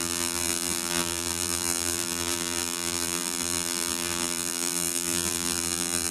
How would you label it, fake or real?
fake